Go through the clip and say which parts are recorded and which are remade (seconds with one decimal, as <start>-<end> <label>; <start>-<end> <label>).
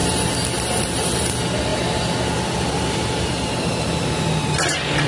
0.0-0.8 remade; 0.8-1.7 recorded; 1.7-5.1 remade